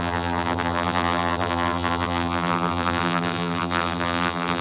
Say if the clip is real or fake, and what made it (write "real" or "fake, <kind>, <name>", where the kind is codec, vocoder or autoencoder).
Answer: fake, vocoder, BigVGAN v2